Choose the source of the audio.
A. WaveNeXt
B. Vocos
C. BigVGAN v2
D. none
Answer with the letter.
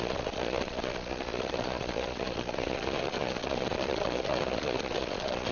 B